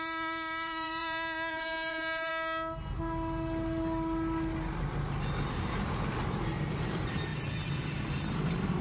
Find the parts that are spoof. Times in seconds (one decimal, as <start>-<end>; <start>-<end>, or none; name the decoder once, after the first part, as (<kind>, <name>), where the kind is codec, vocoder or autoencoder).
0.0-2.3 (vocoder, BigVGAN v2); 6.8-8.8